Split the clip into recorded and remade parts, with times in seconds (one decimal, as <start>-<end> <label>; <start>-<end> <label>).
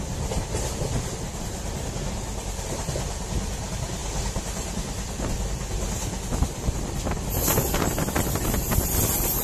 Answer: 0.0-9.4 recorded